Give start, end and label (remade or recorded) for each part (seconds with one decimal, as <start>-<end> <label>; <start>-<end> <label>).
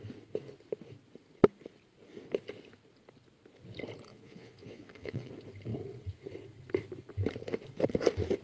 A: 0.0-4.1 recorded; 4.1-5.3 remade; 5.3-8.4 recorded